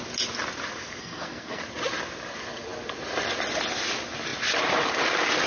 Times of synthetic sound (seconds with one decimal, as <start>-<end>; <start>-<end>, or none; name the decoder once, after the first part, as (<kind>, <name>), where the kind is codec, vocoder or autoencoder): 1.0-1.6 (codec, SNAC)